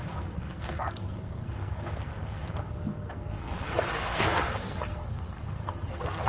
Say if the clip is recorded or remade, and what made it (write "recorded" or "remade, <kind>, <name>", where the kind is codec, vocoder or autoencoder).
remade, codec, SNAC